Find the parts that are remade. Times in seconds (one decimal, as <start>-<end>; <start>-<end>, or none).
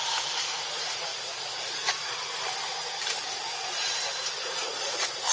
0.0-1.1; 4.3-5.3